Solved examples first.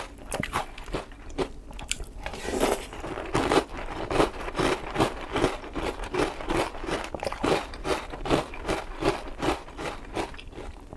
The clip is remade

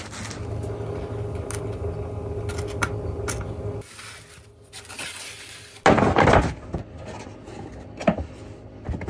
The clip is recorded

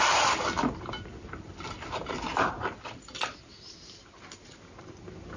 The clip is recorded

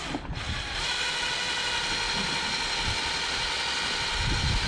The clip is recorded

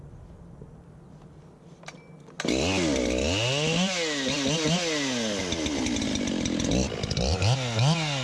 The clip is recorded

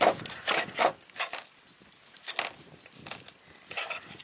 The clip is recorded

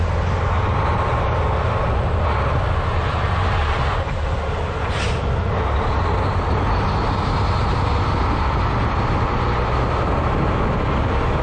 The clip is recorded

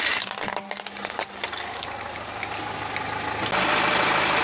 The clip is recorded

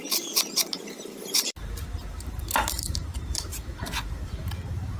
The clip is remade